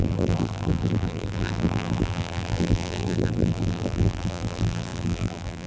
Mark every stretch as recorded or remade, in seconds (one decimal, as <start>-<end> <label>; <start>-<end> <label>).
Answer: 0.0-5.7 remade

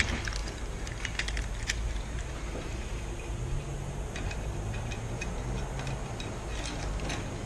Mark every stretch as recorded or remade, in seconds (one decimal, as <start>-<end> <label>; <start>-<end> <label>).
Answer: 0.0-0.4 recorded; 0.4-4.9 remade; 4.9-7.5 recorded

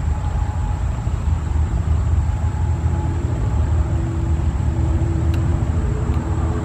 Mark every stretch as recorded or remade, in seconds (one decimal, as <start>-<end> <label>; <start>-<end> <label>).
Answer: 0.0-3.6 remade; 3.6-4.4 recorded; 4.4-6.6 remade

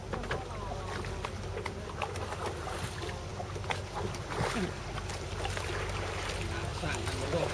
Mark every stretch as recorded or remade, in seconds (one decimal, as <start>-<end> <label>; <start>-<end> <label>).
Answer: 0.0-7.5 recorded

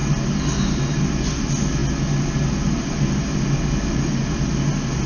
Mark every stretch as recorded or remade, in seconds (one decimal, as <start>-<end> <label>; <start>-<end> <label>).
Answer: 0.0-5.1 recorded

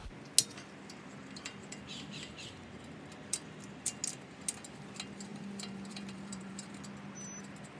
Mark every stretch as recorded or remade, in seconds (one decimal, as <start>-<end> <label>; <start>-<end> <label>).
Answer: 0.0-5.3 recorded; 5.3-6.7 remade; 6.7-7.8 recorded

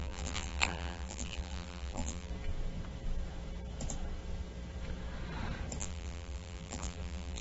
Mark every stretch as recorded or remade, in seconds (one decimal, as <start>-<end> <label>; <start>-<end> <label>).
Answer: 0.0-2.3 remade; 2.3-5.8 recorded; 5.8-7.4 remade